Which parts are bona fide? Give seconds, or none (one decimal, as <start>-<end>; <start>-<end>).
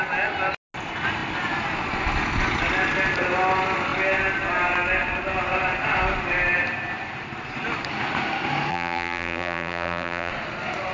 0.0-8.7; 10.3-10.9